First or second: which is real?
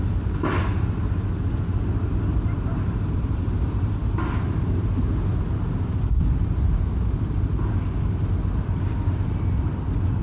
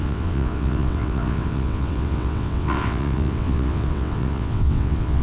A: first